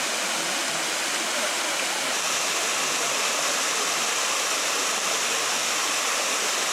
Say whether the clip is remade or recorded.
recorded